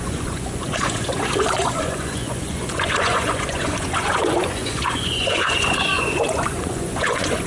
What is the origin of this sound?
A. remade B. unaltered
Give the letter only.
A